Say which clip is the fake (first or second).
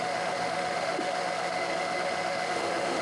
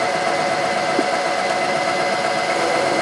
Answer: first